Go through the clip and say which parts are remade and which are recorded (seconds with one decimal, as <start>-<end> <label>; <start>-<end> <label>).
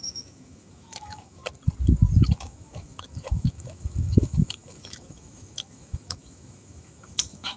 0.0-1.4 remade; 1.4-2.2 recorded; 2.2-7.6 remade